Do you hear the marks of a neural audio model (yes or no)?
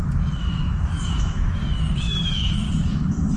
yes